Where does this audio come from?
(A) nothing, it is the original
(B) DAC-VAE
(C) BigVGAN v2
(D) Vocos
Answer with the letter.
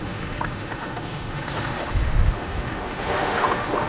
B